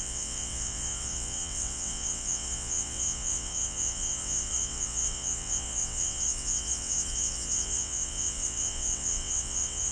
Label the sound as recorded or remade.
remade